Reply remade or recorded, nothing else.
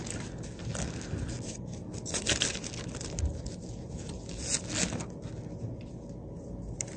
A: recorded